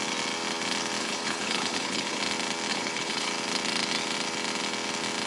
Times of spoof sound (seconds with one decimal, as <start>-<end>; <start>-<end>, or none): 1.0-2.2; 2.7-3.3